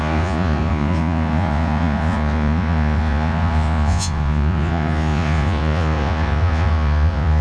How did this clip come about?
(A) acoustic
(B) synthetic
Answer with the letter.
B